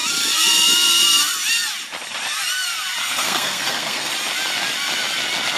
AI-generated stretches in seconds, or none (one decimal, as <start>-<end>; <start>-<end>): 3.0-4.1